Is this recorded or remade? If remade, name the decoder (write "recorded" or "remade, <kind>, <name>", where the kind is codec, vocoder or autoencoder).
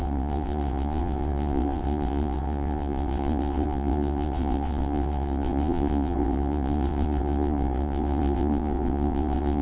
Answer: remade, vocoder, WaveNeXt